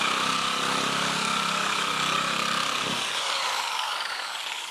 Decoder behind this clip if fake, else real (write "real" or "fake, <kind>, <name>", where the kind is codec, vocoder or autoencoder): fake, codec, DAC